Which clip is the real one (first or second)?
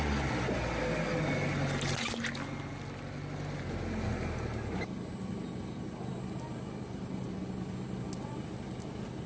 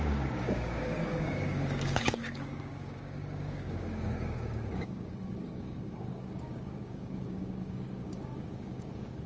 first